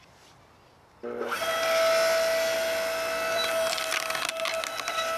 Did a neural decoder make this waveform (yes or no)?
no